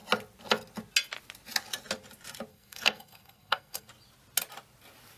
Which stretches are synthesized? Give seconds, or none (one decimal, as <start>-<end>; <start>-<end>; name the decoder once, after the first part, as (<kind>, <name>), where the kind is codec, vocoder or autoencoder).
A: 2.5-3.9 (codec, SNAC)